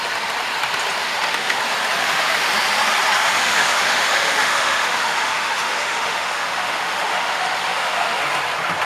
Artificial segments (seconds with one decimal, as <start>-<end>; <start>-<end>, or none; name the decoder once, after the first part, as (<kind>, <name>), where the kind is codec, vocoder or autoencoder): 1.0-1.6 (autoencoder, DAC-VAE); 2.0-2.5; 3.2-8.2